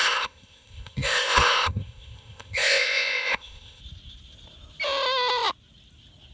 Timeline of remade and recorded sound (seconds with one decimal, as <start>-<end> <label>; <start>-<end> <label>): 0.0-3.8 remade; 3.8-6.3 recorded

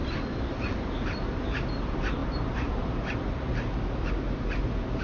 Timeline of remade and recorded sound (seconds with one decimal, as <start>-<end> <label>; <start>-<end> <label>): 0.0-5.0 recorded